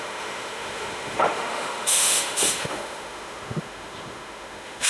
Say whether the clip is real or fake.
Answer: fake